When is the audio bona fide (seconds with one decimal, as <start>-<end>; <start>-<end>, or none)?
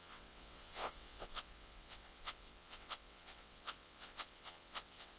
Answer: none